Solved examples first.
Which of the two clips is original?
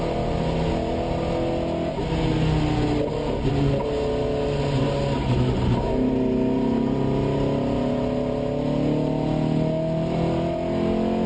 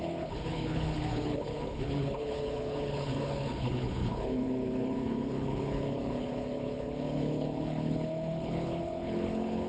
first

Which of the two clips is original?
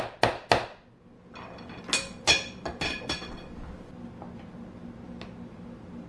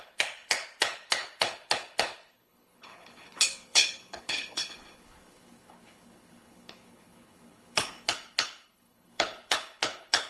first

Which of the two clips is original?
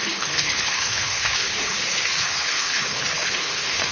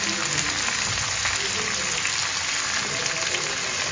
second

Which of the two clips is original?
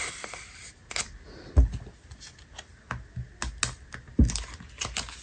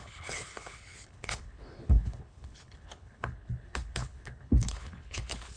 first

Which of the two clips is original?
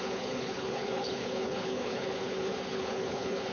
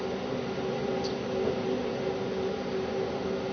second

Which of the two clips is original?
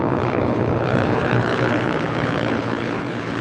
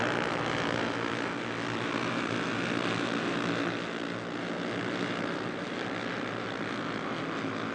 second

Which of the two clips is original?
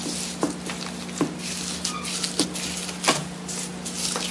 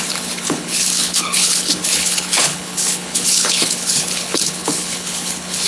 first